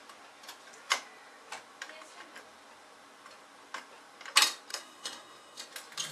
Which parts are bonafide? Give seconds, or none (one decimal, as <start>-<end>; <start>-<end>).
0.0-4.7; 5.6-6.1